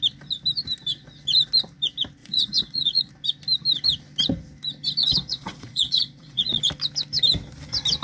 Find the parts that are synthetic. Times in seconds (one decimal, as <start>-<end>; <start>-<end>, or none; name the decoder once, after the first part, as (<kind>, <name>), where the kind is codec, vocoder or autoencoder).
2.2-3.1 (vocoder, Vocos); 5.0-6.6